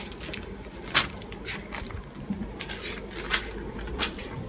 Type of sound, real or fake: real